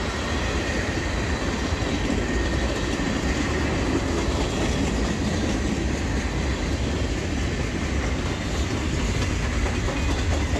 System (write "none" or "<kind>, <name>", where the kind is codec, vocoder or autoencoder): none